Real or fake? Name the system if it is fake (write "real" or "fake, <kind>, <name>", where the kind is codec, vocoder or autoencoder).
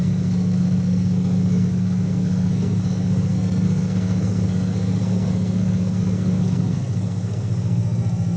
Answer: fake, codec, SNAC